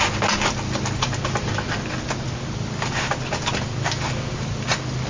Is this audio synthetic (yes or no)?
no